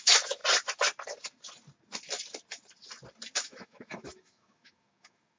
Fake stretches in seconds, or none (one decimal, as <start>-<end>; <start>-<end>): 0.0-0.4; 3.4-5.4